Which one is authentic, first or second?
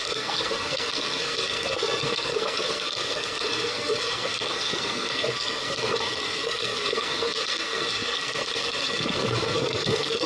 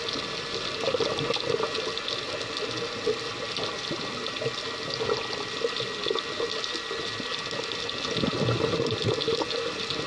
second